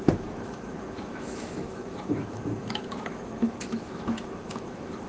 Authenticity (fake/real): fake